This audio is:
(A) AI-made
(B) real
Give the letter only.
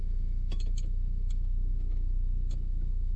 A